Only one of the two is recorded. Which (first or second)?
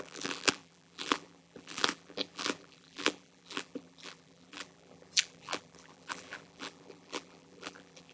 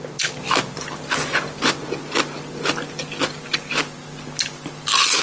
second